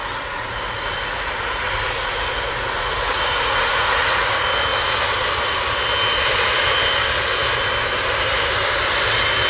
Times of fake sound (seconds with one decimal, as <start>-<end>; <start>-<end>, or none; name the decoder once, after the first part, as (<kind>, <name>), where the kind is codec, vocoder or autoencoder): 0.0-4.3 (vocoder, Vocos)